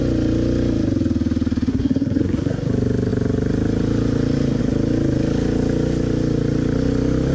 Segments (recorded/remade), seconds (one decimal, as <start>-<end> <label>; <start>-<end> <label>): 0.0-1.7 recorded; 1.7-2.7 remade; 2.7-7.3 recorded